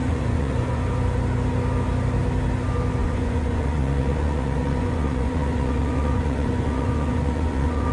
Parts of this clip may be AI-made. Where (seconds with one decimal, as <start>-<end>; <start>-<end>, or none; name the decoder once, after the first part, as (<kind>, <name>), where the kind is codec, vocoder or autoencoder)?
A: 0.0-0.8 (vocoder, Vocos); 3.0-7.9